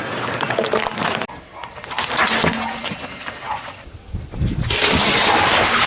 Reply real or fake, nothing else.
real